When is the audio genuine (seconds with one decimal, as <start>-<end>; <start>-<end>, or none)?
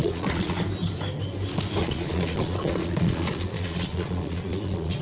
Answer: 0.6-1.8